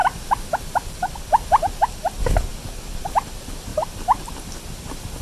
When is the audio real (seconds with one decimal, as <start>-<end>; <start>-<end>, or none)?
0.0-5.2